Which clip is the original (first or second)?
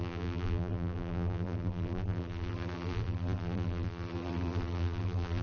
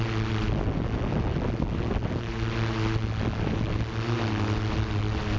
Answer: second